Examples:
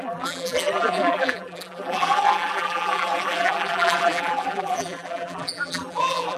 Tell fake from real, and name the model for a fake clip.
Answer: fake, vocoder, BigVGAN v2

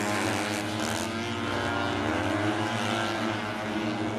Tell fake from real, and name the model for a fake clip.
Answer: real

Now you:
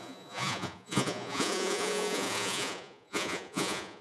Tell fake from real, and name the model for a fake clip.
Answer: fake, vocoder, Vocos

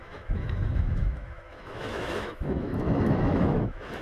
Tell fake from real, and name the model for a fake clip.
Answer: fake, autoencoder, DAC-VAE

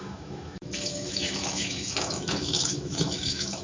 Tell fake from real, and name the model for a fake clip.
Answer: fake, autoencoder, DAC-VAE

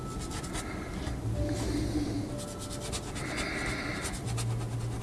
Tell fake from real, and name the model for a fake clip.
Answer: real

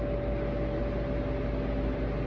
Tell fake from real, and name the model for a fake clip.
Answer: real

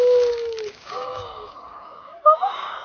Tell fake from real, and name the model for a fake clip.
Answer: fake, codec, DAC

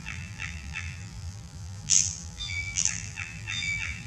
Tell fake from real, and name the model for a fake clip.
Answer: fake, vocoder, BigVGAN v2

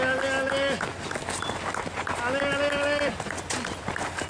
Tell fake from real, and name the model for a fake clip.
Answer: real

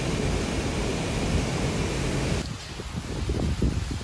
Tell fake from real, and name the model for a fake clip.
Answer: real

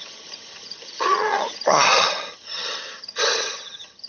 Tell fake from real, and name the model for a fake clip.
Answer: fake, vocoder, HiFi-GAN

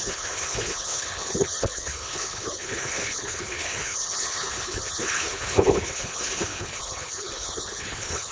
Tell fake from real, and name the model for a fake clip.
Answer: fake, codec, HILCodec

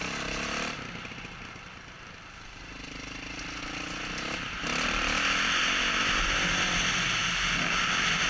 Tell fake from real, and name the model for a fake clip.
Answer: real